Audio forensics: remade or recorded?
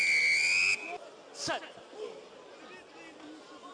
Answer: recorded